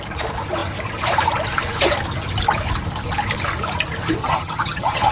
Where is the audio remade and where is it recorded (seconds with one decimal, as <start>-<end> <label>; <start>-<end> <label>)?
0.0-4.2 recorded; 4.2-5.1 remade